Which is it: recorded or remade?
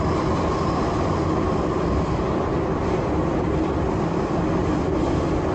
recorded